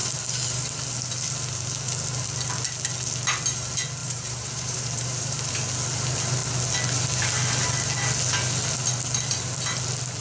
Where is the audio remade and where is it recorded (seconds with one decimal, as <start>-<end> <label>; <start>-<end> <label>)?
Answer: 0.0-4.0 recorded; 4.0-5.5 remade; 5.5-10.2 recorded